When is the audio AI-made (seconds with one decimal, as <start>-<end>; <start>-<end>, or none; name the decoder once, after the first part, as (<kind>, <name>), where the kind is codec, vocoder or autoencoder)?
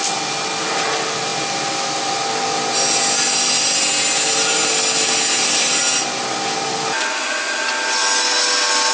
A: none